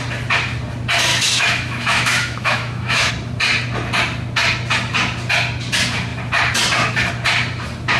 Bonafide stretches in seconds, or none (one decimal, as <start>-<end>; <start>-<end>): 0.0-1.1; 3.1-8.0